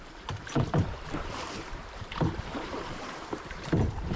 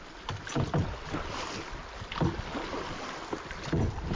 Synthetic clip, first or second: first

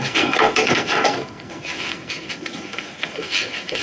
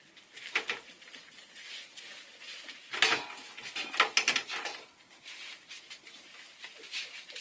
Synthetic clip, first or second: first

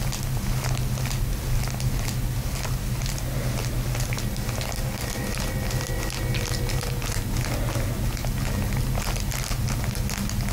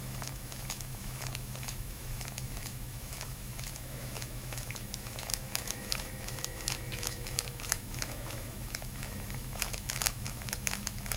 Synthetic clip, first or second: second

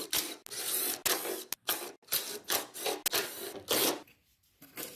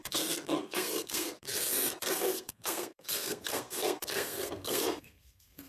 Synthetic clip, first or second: second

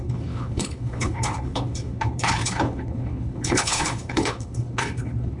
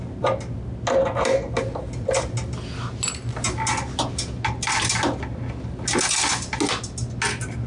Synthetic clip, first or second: first